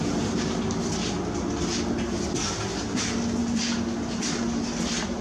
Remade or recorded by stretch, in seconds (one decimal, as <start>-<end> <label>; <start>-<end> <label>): 0.0-5.2 recorded